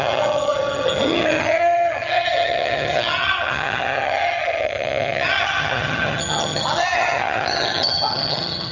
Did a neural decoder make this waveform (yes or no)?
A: yes